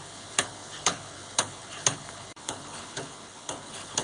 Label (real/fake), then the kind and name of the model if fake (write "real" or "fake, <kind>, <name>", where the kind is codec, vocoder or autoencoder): fake, codec, HILCodec